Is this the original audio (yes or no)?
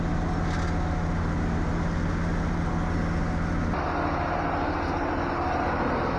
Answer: yes